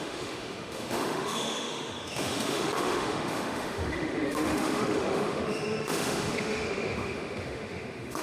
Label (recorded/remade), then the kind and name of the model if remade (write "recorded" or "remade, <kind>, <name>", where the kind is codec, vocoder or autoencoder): remade, autoencoder, DAC-VAE